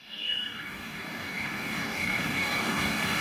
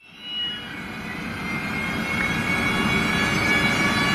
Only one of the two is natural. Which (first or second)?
second